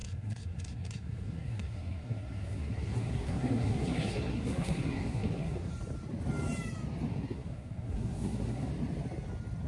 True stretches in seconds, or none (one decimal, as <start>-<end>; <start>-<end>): 5.7-7.1; 8.7-9.7